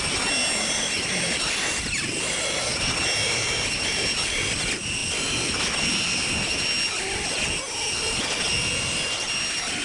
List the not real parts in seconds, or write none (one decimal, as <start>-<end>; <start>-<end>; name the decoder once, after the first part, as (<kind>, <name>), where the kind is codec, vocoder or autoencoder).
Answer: none